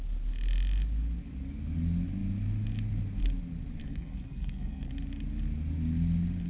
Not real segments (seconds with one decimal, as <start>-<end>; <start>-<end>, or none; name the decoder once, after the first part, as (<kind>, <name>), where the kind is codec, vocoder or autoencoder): 3.8-4.9 (codec, SNAC)